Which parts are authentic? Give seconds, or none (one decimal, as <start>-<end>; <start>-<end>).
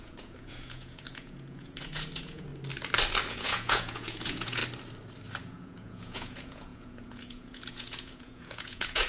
2.5-3.3; 4.6-5.4